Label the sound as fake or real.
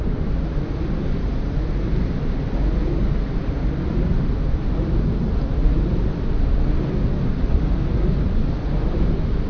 real